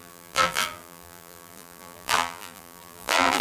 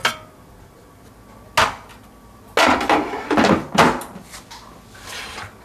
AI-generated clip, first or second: first